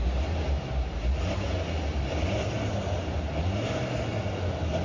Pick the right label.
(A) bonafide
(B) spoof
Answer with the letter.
A